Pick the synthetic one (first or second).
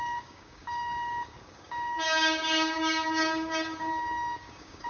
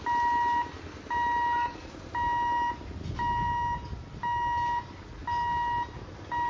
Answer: first